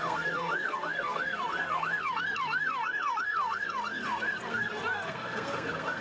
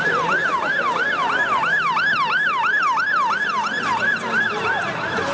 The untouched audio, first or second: second